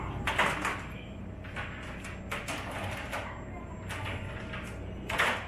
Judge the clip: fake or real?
real